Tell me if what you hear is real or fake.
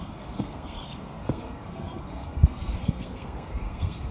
fake